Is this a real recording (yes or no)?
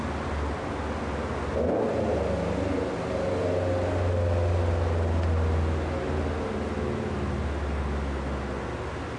yes